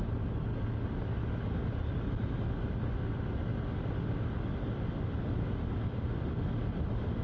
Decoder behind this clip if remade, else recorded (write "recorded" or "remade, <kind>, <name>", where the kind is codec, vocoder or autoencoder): recorded